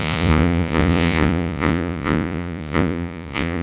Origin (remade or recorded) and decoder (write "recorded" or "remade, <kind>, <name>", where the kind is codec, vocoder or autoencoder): remade, vocoder, Vocos